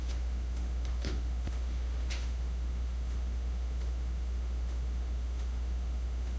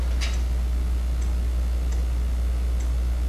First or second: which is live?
second